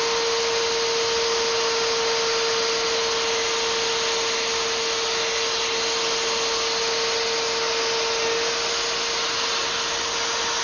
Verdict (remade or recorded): recorded